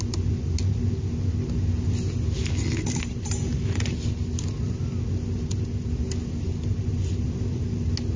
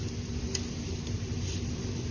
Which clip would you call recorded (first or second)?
first